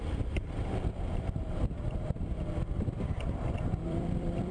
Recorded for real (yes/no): no